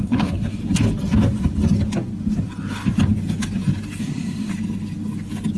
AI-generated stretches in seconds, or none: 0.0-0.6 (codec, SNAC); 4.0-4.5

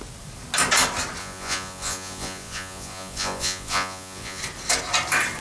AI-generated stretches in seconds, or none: 1.2-4.4 (vocoder, Vocos)

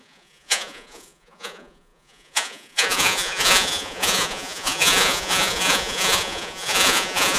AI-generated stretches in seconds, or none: 0.0-7.4 (vocoder, Vocos)

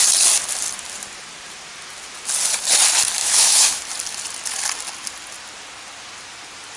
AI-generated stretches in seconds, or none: 3.2-3.8 (autoencoder, DAC-VAE)

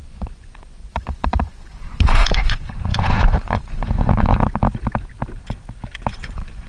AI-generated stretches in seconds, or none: 0.0-4.6 (vocoder, Vocos); 6.1-6.7

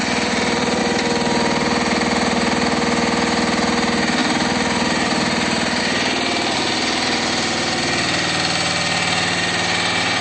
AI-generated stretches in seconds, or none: 0.0-0.8 (vocoder, BigVGAN v2); 4.2-5.8